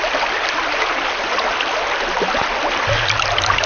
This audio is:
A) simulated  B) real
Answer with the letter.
B